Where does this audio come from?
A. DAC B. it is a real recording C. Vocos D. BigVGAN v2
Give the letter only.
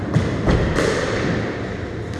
B